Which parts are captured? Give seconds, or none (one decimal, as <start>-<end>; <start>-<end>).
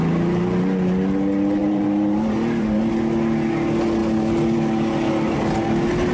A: 0.0-1.6; 2.9-6.1